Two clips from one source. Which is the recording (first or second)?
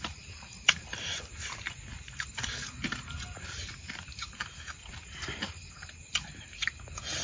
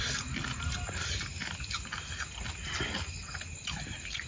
second